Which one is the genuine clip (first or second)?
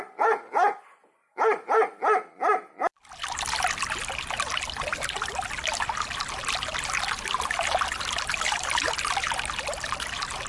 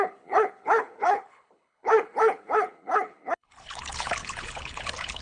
first